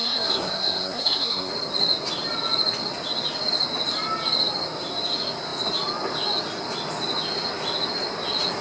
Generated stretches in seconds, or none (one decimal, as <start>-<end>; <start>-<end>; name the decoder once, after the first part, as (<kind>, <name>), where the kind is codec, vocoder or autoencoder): 0.0-1.5 (codec, SNAC)